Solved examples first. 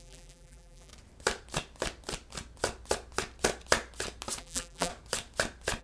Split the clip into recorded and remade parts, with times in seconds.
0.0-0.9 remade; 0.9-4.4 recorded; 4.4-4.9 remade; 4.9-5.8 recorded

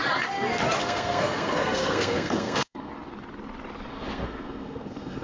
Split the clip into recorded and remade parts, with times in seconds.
0.0-0.8 recorded; 0.8-2.9 remade; 2.9-3.9 recorded; 3.9-5.2 remade